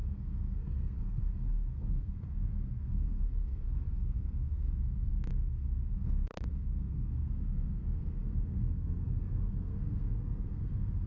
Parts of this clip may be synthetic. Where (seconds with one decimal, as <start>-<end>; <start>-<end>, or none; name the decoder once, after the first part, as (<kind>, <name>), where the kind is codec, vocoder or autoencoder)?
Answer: 0.0-11.1 (codec, SNAC)